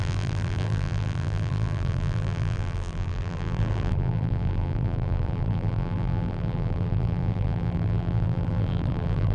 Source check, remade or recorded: remade